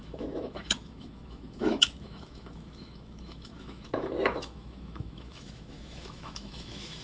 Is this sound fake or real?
fake